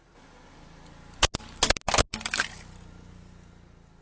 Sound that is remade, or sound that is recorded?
recorded